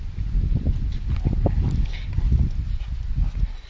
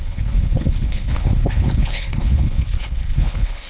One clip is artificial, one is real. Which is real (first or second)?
first